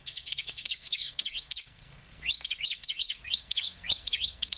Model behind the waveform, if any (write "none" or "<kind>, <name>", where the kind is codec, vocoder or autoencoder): codec, SNAC